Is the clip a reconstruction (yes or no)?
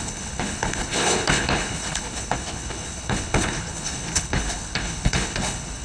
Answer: yes